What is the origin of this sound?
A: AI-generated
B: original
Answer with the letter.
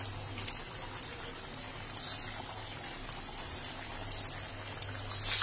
B